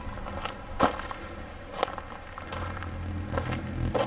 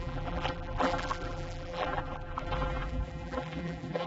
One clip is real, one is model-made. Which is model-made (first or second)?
second